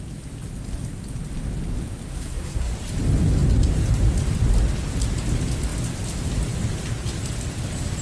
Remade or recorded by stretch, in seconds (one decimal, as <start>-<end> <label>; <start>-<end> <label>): 0.0-2.1 recorded; 2.1-2.7 remade; 2.7-8.0 recorded